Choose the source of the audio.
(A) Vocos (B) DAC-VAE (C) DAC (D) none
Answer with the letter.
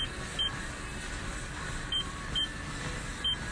D